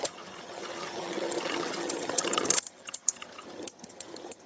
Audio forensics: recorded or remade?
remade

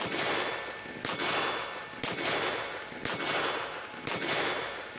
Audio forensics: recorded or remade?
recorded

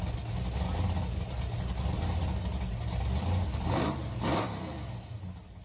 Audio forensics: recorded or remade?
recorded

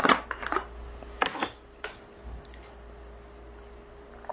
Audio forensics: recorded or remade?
recorded